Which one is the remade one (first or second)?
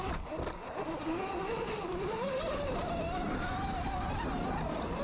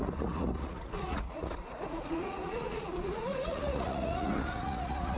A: second